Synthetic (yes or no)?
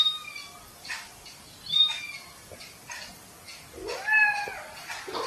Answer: no